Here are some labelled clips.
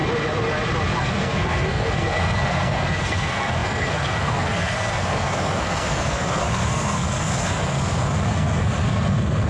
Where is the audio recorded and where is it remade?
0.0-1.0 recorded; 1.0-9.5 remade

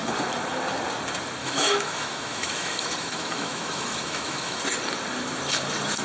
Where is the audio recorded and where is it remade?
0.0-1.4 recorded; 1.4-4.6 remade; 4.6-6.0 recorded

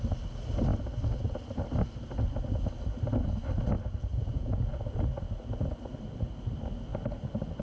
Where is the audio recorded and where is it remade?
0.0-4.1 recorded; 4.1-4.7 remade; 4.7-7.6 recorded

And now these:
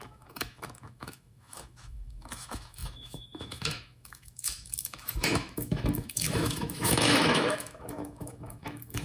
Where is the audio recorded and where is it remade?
0.0-9.0 remade

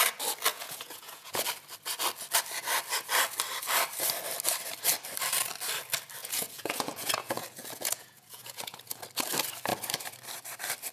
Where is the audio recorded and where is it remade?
0.0-0.5 recorded; 0.5-1.4 remade; 1.4-6.2 recorded; 6.2-9.0 remade; 9.0-10.9 recorded

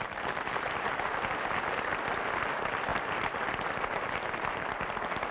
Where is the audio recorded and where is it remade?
0.0-5.3 recorded

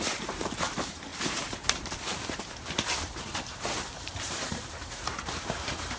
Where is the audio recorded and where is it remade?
0.0-6.0 remade